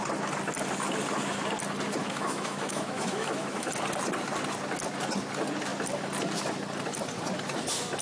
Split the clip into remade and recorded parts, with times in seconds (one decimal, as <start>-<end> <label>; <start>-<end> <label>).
0.0-2.0 recorded; 2.0-3.7 remade; 3.7-8.0 recorded